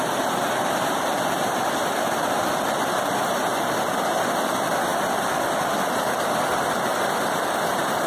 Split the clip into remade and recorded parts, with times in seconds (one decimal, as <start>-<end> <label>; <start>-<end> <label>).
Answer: 0.0-4.9 recorded; 4.9-7.6 remade; 7.6-8.1 recorded